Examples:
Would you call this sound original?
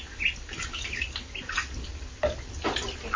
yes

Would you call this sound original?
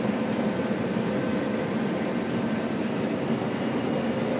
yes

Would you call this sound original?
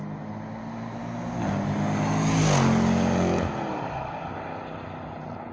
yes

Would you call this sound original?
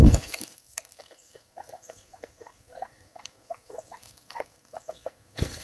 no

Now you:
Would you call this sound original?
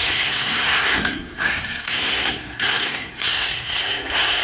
no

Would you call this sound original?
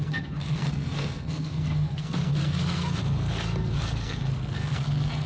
no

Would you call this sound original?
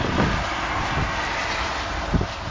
yes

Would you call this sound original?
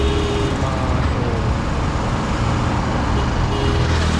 yes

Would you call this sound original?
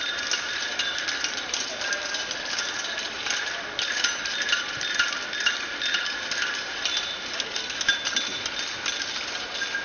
yes